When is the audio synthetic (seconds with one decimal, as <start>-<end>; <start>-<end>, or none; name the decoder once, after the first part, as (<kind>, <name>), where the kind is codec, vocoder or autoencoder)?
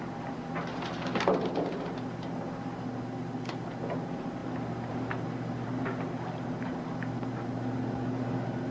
none